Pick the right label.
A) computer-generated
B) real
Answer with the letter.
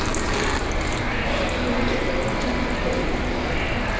B